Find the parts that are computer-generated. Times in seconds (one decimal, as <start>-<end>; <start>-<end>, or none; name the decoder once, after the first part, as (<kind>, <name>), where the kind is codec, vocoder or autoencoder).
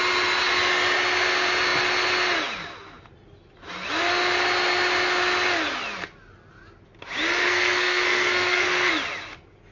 7.4-8.9 (codec, SNAC)